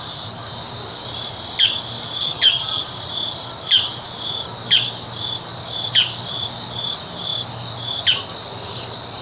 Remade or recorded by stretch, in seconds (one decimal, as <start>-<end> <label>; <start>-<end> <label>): 0.0-2.2 recorded; 2.2-2.8 remade; 2.8-9.2 recorded